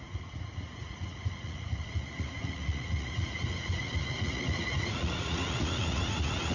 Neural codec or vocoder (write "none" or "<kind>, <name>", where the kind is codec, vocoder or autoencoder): vocoder, Vocos